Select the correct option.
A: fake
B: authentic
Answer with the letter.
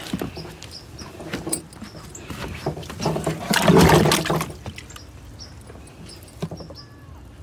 B